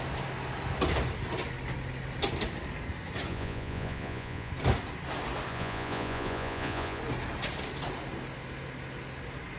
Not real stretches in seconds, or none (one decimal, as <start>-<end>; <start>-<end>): 3.3-4.5; 5.5-7.0